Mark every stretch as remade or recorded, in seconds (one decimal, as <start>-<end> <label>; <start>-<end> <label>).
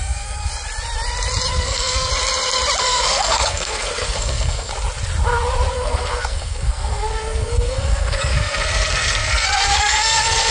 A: 0.0-0.5 remade; 0.5-1.5 recorded; 1.5-2.1 remade; 2.1-2.8 recorded; 2.8-4.7 remade; 4.7-5.7 recorded; 5.7-10.5 remade